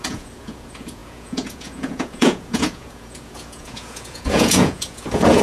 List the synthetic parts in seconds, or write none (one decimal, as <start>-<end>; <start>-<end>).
0.0-5.4